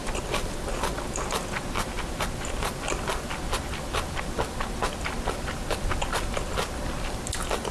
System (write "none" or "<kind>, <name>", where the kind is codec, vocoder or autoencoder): none